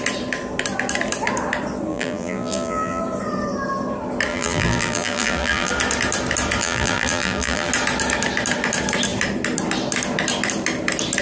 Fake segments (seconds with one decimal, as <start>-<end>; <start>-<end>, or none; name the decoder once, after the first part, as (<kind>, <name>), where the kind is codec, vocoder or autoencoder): 1.9-3.0 (vocoder, BigVGAN v2); 4.3-5.7; 6.6-7.7